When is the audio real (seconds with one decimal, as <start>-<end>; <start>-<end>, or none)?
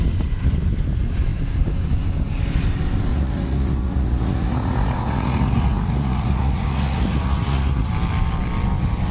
0.0-3.1; 7.9-9.1